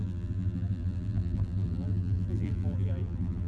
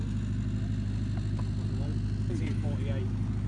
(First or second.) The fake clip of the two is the first